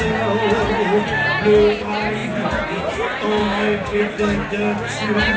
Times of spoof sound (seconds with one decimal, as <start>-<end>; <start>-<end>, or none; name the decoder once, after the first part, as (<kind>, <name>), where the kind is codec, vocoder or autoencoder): 3.4-4.0 (codec, DAC)